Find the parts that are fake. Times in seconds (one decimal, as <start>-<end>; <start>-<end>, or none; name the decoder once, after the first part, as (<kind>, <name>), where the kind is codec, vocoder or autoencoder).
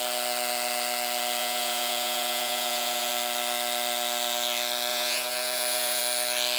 1.4-3.1 (vocoder, Vocos); 4.9-6.0